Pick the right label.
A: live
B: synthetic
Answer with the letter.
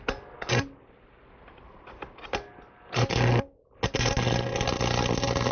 A